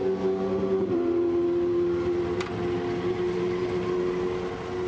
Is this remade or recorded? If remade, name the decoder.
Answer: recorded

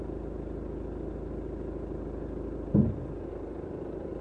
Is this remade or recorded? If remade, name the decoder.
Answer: recorded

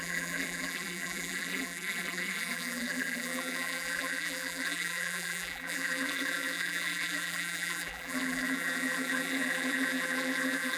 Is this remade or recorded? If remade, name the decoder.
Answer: remade, vocoder, BigVGAN v2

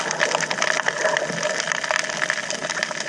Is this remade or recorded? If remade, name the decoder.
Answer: recorded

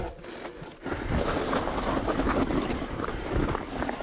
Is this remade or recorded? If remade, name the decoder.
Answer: recorded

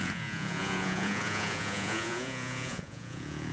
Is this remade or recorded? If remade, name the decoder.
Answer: remade, vocoder, Vocos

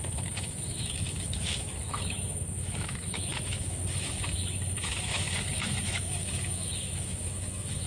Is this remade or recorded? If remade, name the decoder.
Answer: remade, autoencoder, DAC-VAE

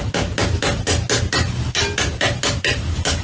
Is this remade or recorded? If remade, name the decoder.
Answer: recorded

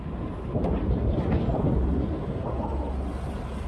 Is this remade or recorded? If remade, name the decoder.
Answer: recorded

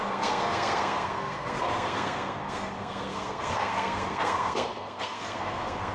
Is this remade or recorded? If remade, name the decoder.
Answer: remade, codec, SNAC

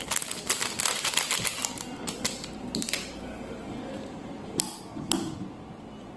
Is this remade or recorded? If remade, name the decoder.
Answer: recorded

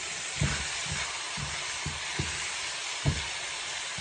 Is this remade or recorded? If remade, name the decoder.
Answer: recorded